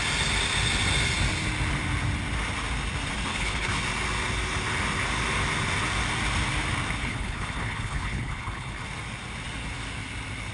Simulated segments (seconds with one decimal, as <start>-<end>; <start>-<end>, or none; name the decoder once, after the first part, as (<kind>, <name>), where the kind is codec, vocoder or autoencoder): 3.3-3.8 (codec, HILCodec); 7.0-8.8